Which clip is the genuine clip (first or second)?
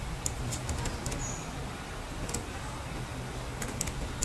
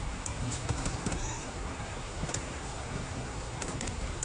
first